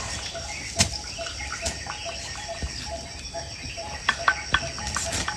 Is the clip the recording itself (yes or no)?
yes